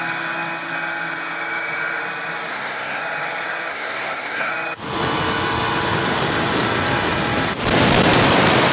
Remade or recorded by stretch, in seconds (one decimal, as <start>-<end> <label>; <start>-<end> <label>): 0.0-2.5 recorded; 2.5-3.0 remade; 3.0-3.7 recorded; 3.7-4.5 remade; 4.5-8.7 recorded